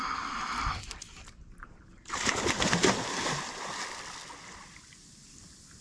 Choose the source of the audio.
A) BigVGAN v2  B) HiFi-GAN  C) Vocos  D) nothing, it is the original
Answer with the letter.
D